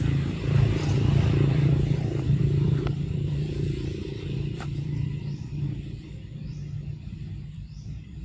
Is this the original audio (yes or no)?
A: no